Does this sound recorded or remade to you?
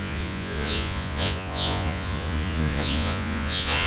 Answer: remade